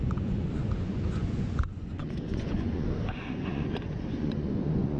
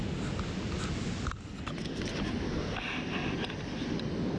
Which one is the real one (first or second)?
second